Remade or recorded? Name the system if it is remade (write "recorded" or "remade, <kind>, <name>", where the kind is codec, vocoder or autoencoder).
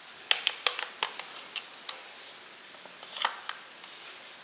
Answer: recorded